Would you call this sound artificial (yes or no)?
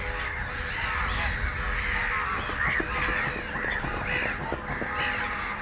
no